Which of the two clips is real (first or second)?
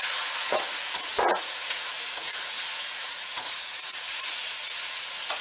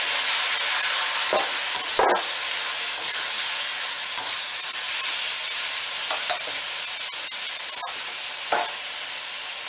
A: second